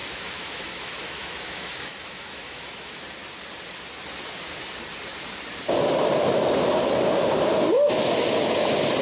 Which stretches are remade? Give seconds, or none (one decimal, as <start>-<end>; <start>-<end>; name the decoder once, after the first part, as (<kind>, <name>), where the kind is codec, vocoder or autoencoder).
0.0-3.0 (autoencoder, DAC-VAE)